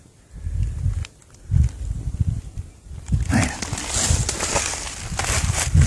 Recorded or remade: recorded